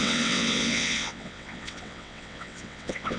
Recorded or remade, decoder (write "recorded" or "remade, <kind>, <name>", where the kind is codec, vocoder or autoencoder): remade, vocoder, WaveNeXt